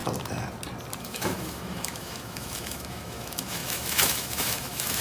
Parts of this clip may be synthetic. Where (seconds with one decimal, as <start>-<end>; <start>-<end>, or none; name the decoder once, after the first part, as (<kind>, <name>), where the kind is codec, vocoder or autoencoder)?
1.0-5.0 (autoencoder, DAC-VAE)